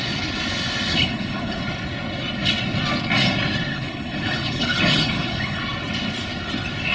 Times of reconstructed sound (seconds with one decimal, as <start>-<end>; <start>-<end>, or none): 0.9-1.6; 3.7-5.6